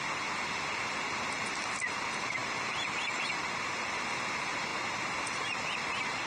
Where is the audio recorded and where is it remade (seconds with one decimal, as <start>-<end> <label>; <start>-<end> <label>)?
0.0-6.3 recorded